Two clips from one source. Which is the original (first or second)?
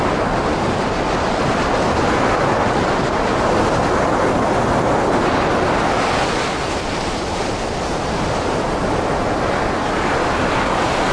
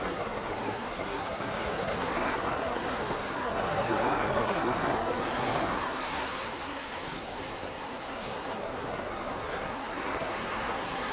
first